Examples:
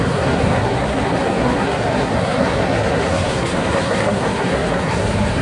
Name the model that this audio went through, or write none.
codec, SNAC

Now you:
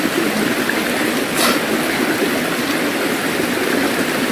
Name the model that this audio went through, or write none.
none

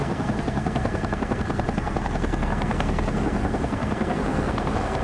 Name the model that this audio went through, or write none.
codec, SNAC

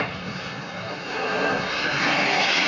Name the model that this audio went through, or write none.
codec, SNAC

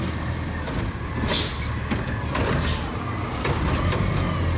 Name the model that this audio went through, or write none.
none